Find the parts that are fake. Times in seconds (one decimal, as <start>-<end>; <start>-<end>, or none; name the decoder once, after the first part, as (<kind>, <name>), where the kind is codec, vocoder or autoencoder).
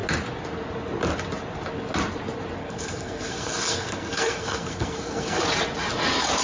2.6-5.4 (codec, SNAC)